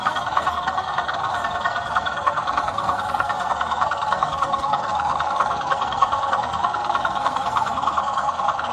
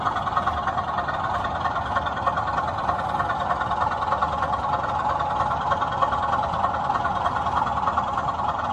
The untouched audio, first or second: second